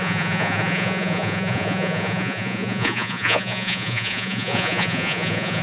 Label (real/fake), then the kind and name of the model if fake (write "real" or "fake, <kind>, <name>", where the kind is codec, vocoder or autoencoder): fake, vocoder, Vocos